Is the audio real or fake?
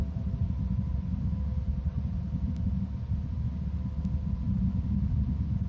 real